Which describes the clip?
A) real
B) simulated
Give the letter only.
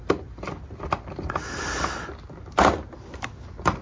A